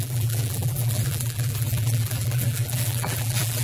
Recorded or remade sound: remade